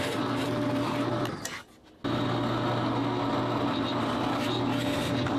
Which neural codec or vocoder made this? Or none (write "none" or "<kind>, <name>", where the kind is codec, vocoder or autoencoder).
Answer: none